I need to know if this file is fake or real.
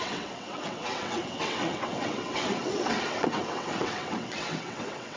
fake